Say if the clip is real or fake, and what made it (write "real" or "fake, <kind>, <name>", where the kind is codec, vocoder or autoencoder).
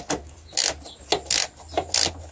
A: real